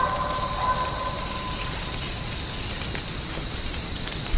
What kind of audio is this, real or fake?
real